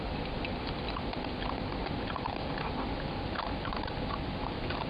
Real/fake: real